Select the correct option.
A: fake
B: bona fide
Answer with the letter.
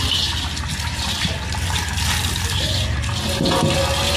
B